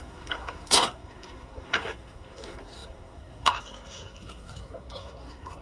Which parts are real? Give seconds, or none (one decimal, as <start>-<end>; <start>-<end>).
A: none

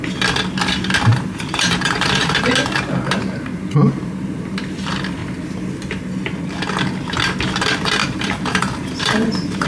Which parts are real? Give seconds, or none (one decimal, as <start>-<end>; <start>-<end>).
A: 0.0-1.1; 2.5-8.0

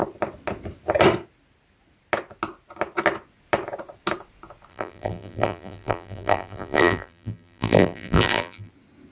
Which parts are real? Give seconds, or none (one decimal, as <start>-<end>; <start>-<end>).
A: 0.0-4.7; 8.7-9.1

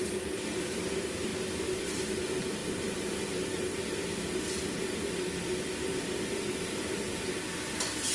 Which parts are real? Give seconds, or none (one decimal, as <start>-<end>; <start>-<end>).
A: 0.0-8.1

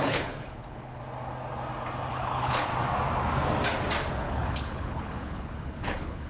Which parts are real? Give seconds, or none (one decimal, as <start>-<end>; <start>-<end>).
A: 1.0-2.1; 2.7-4.2

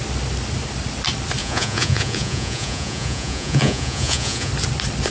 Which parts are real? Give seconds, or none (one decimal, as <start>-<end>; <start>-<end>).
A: 0.0-1.4; 4.5-5.1

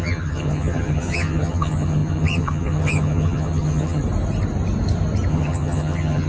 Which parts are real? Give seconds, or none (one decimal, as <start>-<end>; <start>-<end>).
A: 4.0-5.3

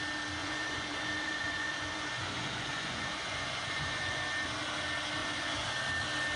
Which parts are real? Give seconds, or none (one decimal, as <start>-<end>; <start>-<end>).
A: 0.0-0.4; 4.2-5.2; 5.7-6.4